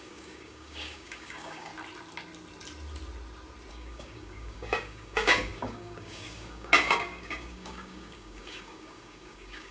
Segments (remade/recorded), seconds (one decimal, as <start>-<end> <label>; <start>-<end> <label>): 0.0-1.7 remade; 1.7-3.7 recorded; 3.7-9.7 remade